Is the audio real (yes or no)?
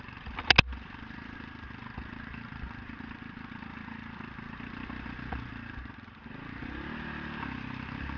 yes